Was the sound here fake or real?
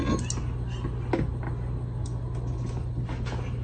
real